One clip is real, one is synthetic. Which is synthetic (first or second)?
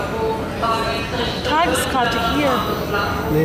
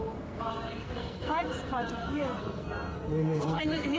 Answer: second